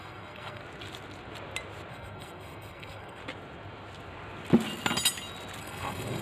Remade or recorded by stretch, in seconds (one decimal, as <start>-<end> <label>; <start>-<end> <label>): 0.0-0.6 remade; 0.6-1.9 recorded; 1.9-3.2 remade; 3.2-5.6 recorded; 5.6-6.2 remade